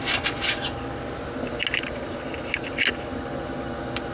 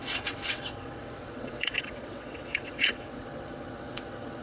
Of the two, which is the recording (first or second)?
first